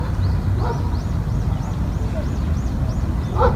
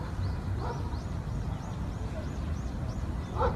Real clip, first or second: first